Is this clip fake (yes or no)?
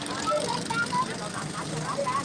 no